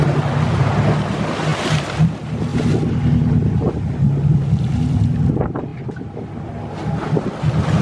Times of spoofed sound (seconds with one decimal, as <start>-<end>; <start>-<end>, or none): none